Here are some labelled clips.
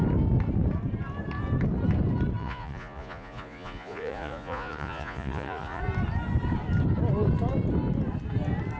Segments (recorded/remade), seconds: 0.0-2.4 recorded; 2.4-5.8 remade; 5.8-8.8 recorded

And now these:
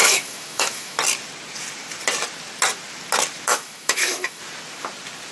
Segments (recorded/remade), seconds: 0.0-1.0 remade; 1.0-3.5 recorded; 3.5-4.4 remade; 4.4-5.3 recorded

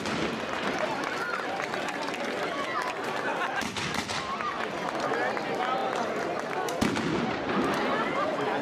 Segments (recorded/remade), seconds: 0.0-3.3 recorded; 3.3-4.2 remade; 4.2-5.8 recorded; 5.8-6.7 remade; 6.7-8.6 recorded

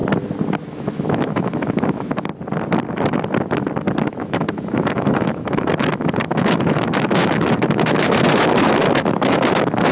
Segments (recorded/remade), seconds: 0.0-0.6 recorded; 0.6-2.3 remade; 2.3-4.0 recorded; 4.0-9.9 remade

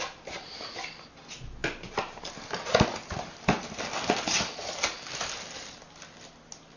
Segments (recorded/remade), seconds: 0.0-6.8 recorded

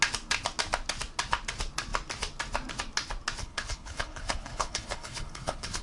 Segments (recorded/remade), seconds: 0.0-3.4 recorded; 3.4-5.8 remade

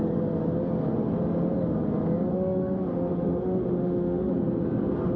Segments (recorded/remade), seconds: 0.0-2.3 recorded; 2.3-4.3 remade; 4.3-5.2 recorded